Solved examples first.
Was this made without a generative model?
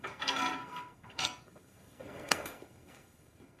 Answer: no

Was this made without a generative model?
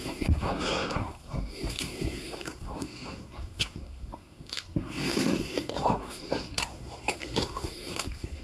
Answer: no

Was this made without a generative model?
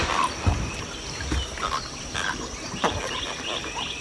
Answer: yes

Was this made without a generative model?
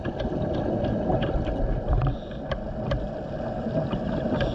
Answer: yes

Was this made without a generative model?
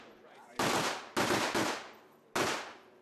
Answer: yes